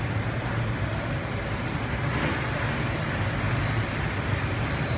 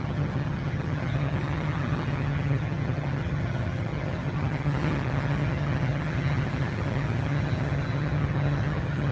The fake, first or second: second